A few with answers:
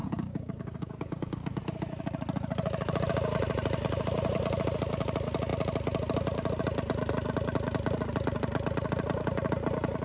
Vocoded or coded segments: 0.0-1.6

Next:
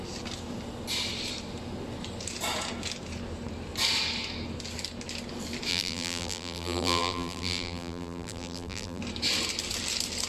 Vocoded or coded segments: 5.7-9.0

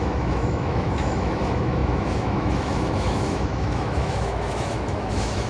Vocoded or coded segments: 0.0-5.5

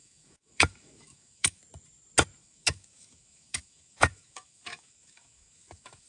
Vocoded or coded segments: 0.0-1.6; 2.4-6.1

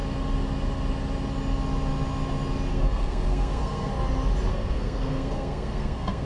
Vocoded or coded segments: 2.7-3.9; 4.5-6.3

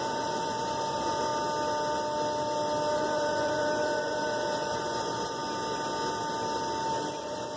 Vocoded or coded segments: 0.0-1.3; 2.9-5.4; 7.1-7.6

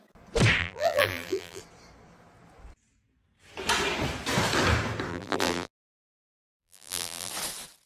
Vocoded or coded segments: 0.6-1.6; 5.1-5.7; 6.2-7.3